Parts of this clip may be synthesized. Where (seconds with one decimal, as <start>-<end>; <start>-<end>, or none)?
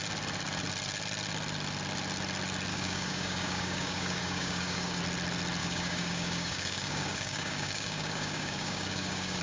2.7-5.0; 5.6-9.4